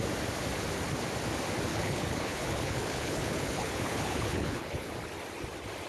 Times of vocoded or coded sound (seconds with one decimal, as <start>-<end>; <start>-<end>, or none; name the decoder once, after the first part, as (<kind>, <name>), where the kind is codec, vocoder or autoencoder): 1.7-4.9 (codec, HILCodec)